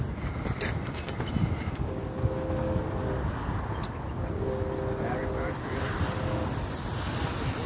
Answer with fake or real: real